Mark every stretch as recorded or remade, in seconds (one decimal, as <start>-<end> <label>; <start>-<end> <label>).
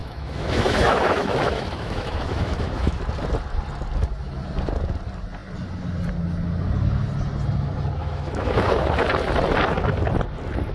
0.0-3.0 remade; 3.0-8.0 recorded; 8.0-8.7 remade; 8.7-10.7 recorded